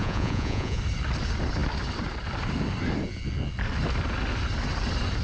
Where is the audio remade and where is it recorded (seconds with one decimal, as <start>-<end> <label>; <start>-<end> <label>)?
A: 0.0-0.8 remade; 0.8-5.2 recorded